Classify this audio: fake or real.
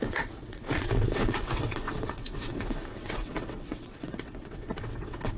fake